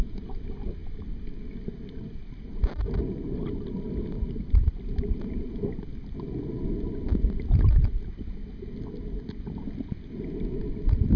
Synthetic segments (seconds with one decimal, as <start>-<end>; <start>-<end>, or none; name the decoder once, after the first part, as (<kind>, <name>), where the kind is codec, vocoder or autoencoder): none